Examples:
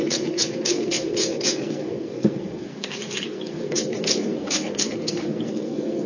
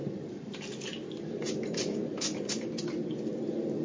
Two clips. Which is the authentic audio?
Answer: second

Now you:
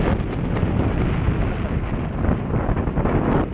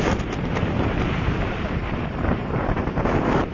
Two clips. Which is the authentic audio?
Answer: first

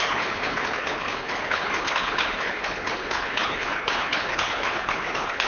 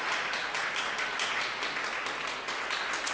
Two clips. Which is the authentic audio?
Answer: second